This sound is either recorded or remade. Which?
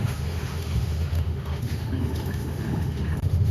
remade